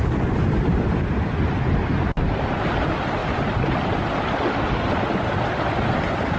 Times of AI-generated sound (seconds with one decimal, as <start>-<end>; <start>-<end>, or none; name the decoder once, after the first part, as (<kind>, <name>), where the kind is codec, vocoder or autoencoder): none